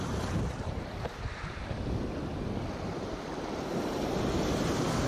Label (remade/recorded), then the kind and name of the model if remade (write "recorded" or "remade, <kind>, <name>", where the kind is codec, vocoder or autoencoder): remade, vocoder, BigVGAN v2